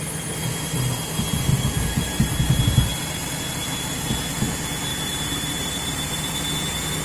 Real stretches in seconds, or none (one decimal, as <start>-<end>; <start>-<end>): 0.0-1.5; 3.1-4.9; 6.1-7.0